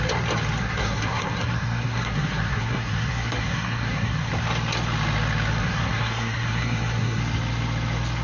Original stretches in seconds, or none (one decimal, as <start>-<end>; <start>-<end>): 0.0-0.6; 4.3-5.6; 7.2-8.2